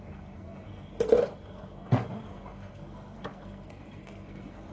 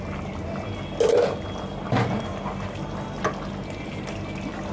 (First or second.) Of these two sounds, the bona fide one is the second